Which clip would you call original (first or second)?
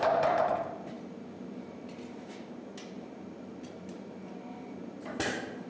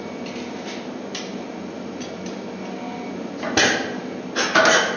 second